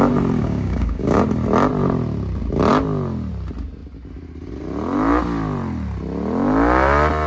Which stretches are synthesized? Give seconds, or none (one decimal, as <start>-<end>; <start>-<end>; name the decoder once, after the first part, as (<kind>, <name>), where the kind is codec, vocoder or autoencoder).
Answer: 0.4-1.2 (codec, DAC)